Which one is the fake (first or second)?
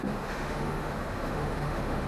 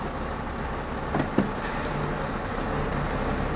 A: first